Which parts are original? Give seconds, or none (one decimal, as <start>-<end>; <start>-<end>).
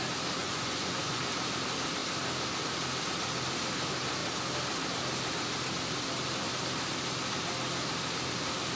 0.0-0.4; 1.2-8.8